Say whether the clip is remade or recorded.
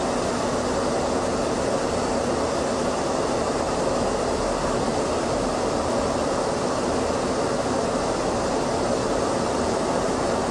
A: remade